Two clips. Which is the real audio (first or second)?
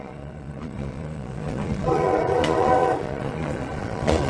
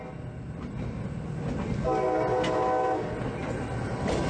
second